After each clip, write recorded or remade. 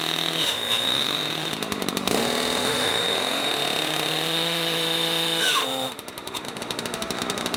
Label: remade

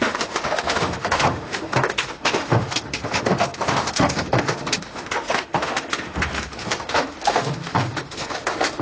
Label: remade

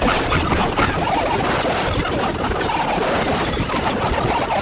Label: recorded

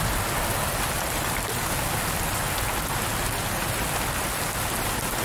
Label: recorded